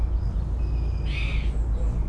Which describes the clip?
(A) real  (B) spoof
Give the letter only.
A